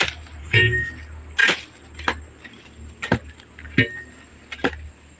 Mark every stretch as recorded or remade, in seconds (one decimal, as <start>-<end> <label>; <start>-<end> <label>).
0.0-0.4 recorded; 0.4-0.9 remade; 0.9-5.2 recorded

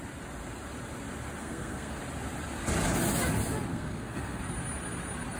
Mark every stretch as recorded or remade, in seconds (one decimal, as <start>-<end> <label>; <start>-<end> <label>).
0.0-1.4 recorded; 1.4-2.0 remade; 2.0-3.7 recorded; 3.7-4.4 remade; 4.4-5.4 recorded

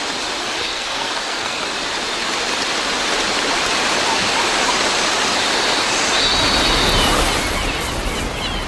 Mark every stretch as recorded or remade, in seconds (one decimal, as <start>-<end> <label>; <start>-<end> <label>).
0.0-0.4 recorded; 0.4-1.6 remade; 1.6-8.7 recorded

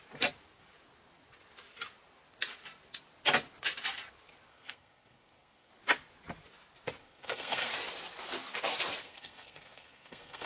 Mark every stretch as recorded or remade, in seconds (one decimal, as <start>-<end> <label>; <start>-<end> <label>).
0.0-4.5 recorded; 4.5-5.7 remade; 5.7-7.0 recorded; 7.0-7.7 remade; 7.7-9.0 recorded; 9.0-10.5 remade

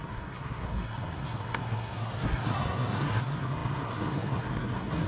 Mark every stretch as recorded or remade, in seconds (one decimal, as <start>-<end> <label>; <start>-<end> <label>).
0.0-5.1 remade

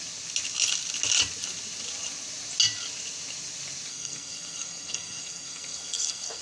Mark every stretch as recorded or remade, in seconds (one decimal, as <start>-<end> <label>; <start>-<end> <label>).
0.0-3.9 recorded; 3.9-6.4 remade

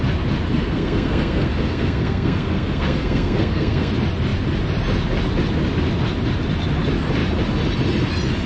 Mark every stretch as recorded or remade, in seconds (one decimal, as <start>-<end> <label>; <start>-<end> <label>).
0.0-0.5 recorded; 0.5-3.9 remade; 3.9-8.5 recorded